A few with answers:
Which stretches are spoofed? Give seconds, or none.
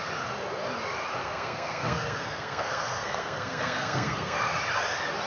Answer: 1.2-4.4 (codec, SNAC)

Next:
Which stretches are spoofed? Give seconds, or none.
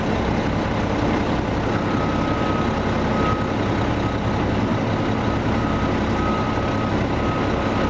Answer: none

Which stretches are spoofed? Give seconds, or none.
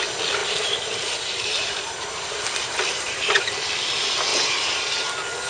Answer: 0.4-3.7 (vocoder, BigVGAN v2); 4.3-5.1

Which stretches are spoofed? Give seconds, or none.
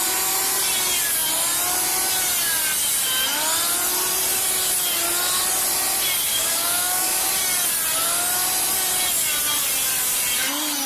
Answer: 6.3-7.3 (codec, DAC)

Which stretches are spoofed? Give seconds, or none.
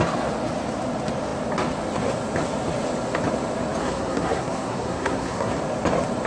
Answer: 3.8-5.5 (codec, SNAC)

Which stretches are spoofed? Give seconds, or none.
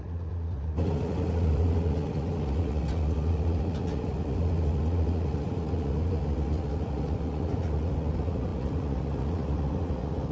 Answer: 0.0-10.3 (vocoder, Vocos)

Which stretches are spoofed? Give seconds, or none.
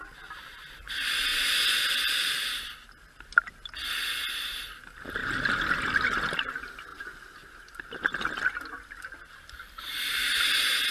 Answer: none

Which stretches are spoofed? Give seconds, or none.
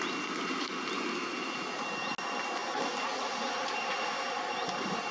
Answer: 1.3-1.8 (vocoder, Vocos)